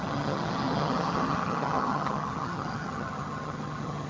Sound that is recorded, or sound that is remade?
remade